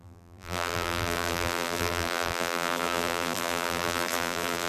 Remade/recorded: remade